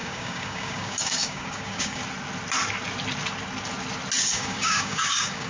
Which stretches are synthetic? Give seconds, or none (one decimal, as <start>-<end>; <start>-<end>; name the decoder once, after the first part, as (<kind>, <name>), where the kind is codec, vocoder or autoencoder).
0.0-2.0 (codec, DAC); 4.2-5.5